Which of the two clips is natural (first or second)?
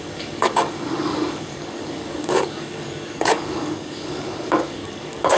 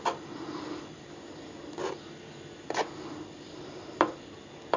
second